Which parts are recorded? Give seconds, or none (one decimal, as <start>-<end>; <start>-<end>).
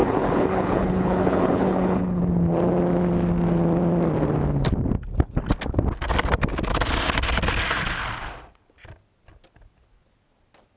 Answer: 2.2-10.8